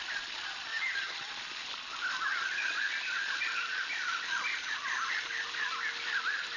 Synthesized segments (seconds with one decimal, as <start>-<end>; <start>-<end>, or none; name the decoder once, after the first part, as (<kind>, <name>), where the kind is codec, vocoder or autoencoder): 0.7-1.3 (vocoder, HiFi-GAN)